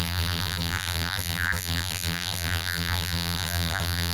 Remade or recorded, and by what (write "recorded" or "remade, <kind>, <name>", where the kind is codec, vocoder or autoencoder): remade, vocoder, BigVGAN v2